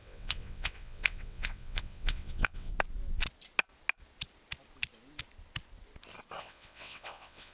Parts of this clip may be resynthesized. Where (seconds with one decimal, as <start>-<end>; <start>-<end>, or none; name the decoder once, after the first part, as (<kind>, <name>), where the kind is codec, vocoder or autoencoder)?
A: 0.0-2.7 (vocoder, WaveNeXt); 6.4-7.5